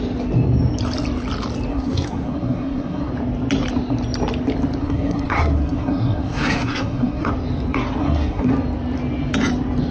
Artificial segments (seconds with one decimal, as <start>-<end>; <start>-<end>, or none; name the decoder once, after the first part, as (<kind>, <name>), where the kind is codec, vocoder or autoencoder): 1.7-3.1 (codec, SNAC); 4.8-7.3; 8.0-8.5